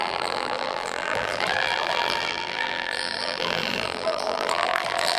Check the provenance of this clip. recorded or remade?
remade